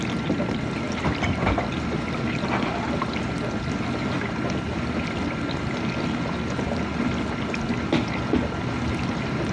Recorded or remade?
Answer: recorded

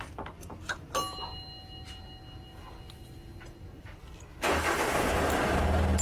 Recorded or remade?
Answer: recorded